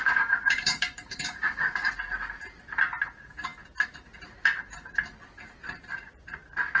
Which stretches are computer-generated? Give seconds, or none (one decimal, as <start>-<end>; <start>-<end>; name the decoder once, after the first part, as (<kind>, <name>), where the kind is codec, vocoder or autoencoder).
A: 0.0-1.9 (codec, DAC)